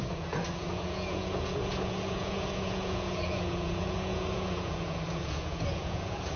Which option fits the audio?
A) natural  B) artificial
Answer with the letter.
B